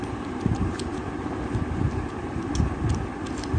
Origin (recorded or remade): recorded